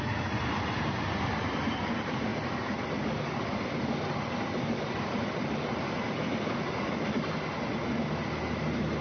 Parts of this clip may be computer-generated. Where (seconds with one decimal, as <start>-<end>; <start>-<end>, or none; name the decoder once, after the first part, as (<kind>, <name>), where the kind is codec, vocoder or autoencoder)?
none